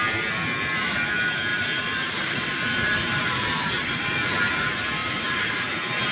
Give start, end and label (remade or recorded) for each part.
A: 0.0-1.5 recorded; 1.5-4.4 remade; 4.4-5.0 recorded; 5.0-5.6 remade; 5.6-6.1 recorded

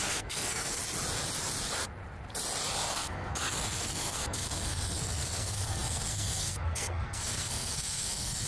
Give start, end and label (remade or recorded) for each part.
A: 0.0-0.8 remade; 0.8-2.9 recorded; 2.9-8.5 remade

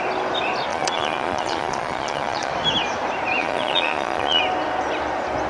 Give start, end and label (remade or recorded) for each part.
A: 0.0-0.7 recorded; 0.7-2.5 remade; 2.5-3.4 recorded; 3.4-4.4 remade; 4.4-5.5 recorded

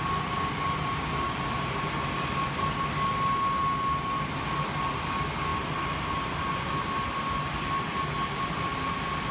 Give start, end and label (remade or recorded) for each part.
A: 0.0-9.3 recorded

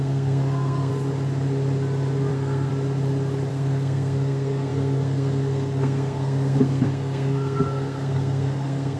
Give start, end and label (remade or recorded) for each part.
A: 0.0-0.9 remade; 0.9-2.3 recorded; 2.3-2.7 remade; 2.7-3.5 recorded; 3.5-9.0 remade

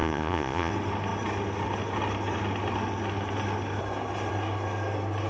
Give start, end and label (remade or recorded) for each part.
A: 0.0-0.7 remade; 0.7-5.3 recorded

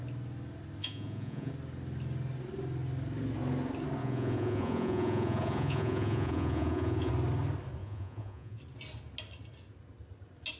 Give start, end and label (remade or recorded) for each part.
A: 0.0-0.8 recorded; 0.8-1.5 remade; 1.5-4.0 recorded; 4.0-7.1 remade; 7.1-7.8 recorded; 7.8-8.6 remade; 8.6-10.6 recorded